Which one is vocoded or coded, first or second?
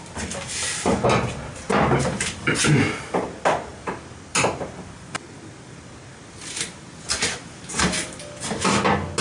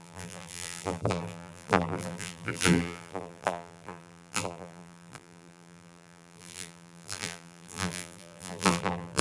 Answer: second